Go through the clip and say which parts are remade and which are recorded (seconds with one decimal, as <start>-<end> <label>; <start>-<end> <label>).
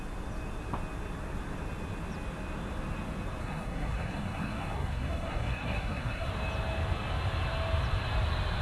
0.0-3.4 recorded; 3.4-6.3 remade; 6.3-8.6 recorded